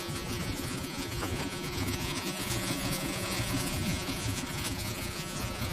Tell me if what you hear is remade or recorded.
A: remade